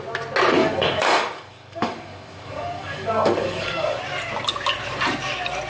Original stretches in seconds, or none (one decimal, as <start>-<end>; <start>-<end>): 0.0-0.6; 4.0-5.7